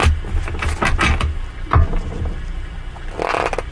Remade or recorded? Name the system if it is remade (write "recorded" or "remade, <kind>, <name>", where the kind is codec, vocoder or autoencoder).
recorded